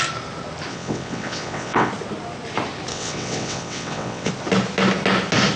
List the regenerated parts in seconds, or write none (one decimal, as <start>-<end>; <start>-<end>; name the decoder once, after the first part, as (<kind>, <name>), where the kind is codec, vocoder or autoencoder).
0.7-1.9 (vocoder, WaveNeXt); 2.9-4.3